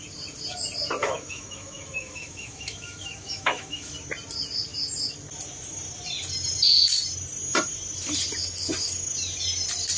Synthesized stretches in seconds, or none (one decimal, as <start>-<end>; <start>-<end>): 1.0-3.9